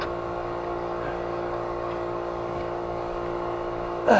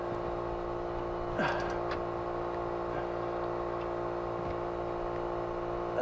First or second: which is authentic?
second